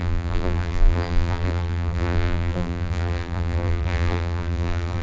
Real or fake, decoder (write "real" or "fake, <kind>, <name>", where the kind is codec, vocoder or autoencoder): fake, vocoder, BigVGAN v2